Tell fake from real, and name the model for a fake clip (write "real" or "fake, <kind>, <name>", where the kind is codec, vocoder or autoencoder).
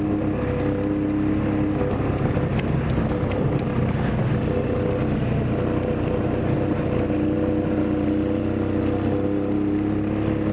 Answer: real